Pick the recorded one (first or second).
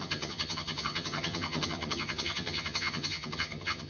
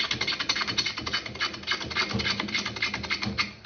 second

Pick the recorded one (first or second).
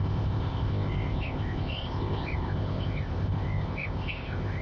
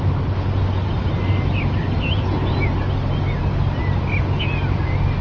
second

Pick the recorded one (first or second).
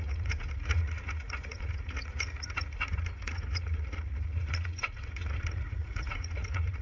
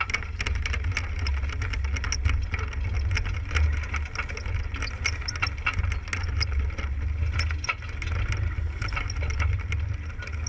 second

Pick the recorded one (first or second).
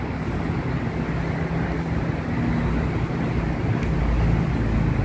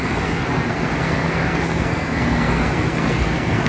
first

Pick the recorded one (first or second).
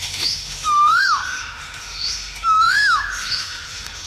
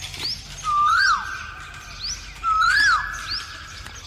second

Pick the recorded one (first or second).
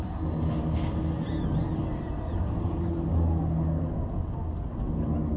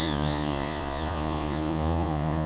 first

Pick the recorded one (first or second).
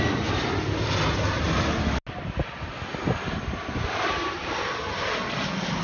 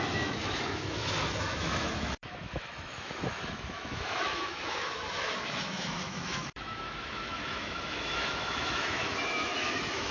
first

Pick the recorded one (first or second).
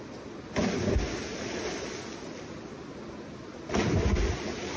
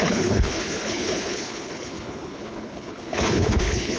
first